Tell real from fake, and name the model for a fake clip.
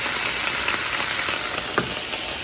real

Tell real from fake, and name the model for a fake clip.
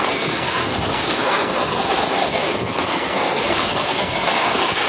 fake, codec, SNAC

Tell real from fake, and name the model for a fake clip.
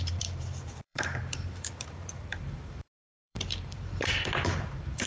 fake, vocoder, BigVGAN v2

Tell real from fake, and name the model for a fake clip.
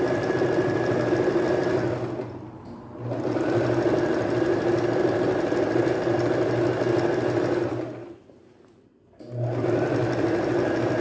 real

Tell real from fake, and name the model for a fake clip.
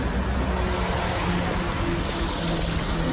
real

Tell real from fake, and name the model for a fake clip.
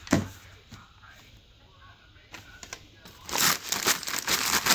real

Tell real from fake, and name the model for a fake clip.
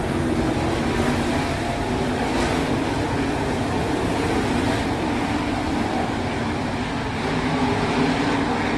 real